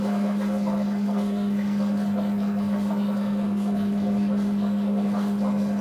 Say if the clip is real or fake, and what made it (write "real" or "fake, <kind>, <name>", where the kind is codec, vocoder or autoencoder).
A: fake, codec, SNAC